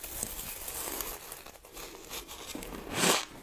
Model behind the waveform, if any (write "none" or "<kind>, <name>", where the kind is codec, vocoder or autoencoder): none